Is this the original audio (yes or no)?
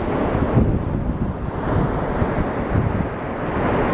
yes